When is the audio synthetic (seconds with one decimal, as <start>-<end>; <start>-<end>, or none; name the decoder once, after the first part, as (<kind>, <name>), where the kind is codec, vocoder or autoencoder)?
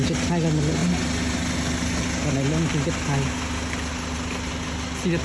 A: none